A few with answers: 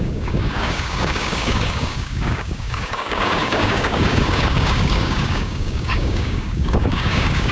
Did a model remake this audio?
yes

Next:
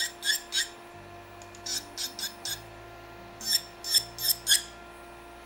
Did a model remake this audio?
no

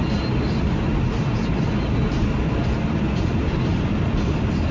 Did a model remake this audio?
no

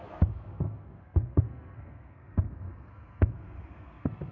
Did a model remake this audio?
yes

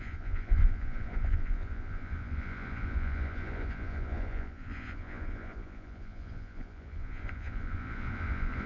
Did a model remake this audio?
yes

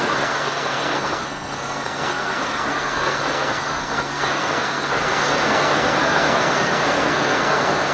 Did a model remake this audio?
yes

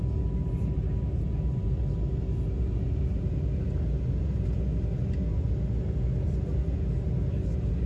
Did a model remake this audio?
no